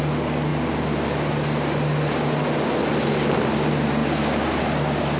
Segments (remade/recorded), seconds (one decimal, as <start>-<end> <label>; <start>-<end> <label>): 0.0-5.2 recorded